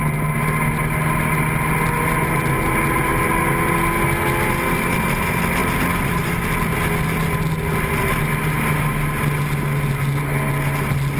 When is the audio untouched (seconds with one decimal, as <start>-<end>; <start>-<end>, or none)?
0.0-11.2